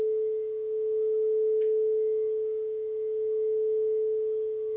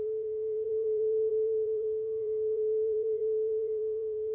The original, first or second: first